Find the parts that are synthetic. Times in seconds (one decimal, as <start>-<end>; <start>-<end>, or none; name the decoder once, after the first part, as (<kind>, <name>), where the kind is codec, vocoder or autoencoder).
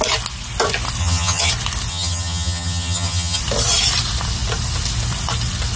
1.0-1.5 (vocoder, HiFi-GAN); 1.9-3.4